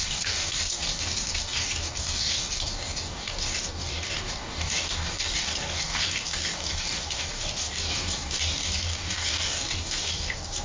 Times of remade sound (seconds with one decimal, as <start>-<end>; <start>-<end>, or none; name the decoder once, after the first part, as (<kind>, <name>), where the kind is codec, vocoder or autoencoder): 0.0-10.6 (codec, DAC)